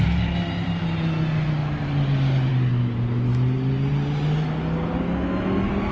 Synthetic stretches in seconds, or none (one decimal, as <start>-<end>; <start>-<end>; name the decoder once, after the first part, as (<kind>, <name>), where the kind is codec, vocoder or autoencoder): none